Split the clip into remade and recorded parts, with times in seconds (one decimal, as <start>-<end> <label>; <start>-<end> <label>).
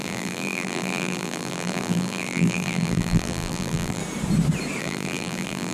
0.0-4.0 remade; 4.0-4.8 recorded; 4.8-5.7 remade